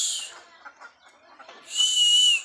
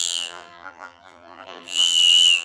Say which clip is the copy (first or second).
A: second